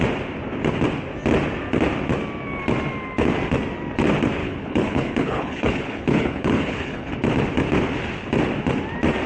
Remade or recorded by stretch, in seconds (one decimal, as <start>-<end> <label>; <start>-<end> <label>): 0.0-4.4 recorded; 4.4-7.1 remade; 7.1-9.3 recorded